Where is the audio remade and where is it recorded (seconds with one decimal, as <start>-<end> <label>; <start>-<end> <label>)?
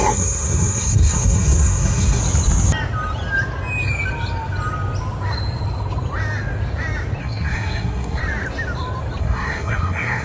0.0-2.2 remade; 2.2-7.2 recorded; 7.2-8.2 remade; 8.2-9.2 recorded; 9.2-10.2 remade